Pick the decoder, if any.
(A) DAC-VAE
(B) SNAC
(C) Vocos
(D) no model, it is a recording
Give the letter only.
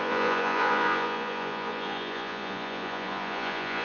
C